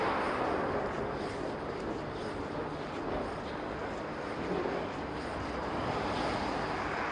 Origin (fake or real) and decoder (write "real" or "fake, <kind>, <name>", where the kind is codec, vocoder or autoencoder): real